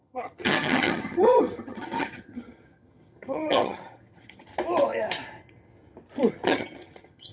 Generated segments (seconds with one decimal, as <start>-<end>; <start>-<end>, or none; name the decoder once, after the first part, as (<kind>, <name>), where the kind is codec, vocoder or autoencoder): 0.0-4.5 (vocoder, HiFi-GAN); 6.3-7.3